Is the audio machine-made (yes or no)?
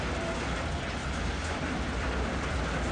no